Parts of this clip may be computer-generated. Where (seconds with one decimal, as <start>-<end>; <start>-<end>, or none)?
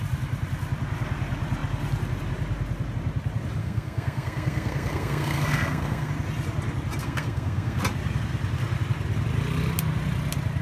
3.6-6.1; 7.0-7.8